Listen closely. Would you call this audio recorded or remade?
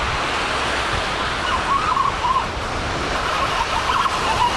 recorded